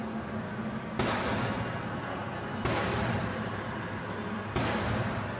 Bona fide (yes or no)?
yes